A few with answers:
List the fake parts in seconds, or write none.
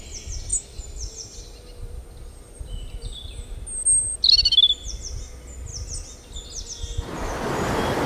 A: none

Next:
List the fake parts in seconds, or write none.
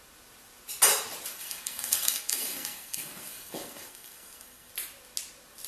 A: 1.3-4.7 (codec, SNAC)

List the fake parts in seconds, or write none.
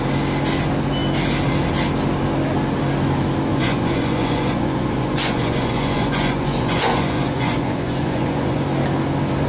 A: 3.5-8.6 (vocoder, Vocos)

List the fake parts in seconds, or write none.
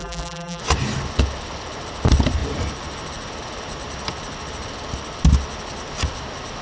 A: 0.0-0.6 (vocoder, BigVGAN v2)